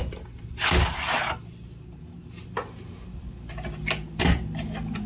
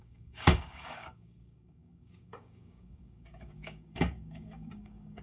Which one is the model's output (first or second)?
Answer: second